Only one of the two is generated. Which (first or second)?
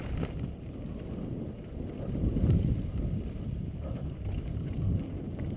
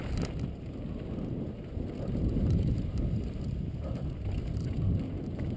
first